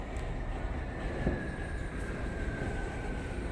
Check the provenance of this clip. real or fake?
real